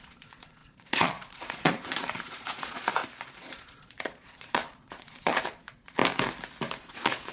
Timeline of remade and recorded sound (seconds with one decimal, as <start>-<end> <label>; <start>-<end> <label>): 0.0-3.0 remade; 3.0-3.5 recorded; 3.5-6.0 remade; 6.0-6.8 recorded; 6.8-7.3 remade